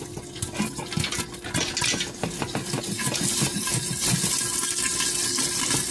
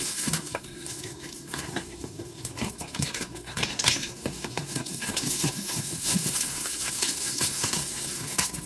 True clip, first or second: first